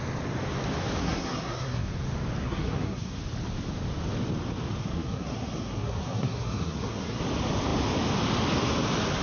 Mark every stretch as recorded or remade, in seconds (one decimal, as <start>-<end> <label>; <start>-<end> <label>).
0.0-1.0 recorded; 1.0-1.9 remade; 1.9-2.4 recorded; 2.4-3.1 remade; 3.1-4.8 recorded; 4.8-7.2 remade; 7.2-9.2 recorded